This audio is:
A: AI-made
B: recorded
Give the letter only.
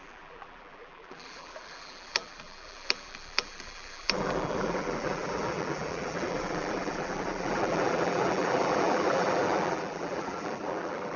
A